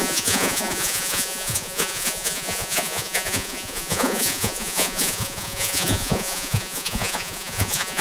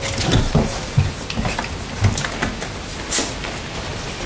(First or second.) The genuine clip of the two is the second